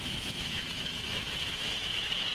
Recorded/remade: remade